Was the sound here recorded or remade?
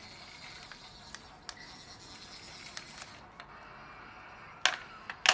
recorded